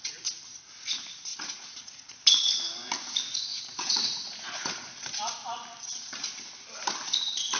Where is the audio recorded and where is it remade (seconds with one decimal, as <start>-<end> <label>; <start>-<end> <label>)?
0.0-1.3 recorded; 1.3-2.1 remade; 2.1-3.5 recorded; 3.5-4.7 remade; 4.7-7.6 recorded